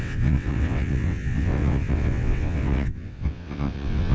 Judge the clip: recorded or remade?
remade